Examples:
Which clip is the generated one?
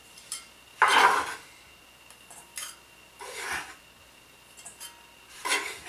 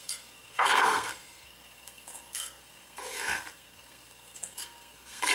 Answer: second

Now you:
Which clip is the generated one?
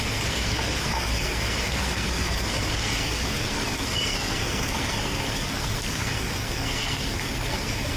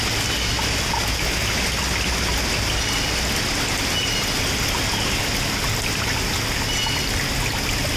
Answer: first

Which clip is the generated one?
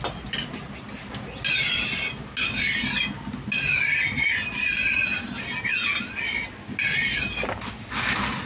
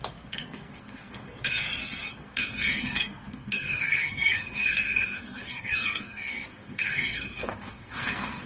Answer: second